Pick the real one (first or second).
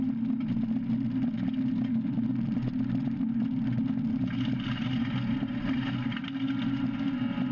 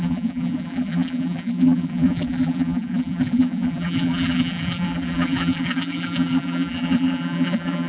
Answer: first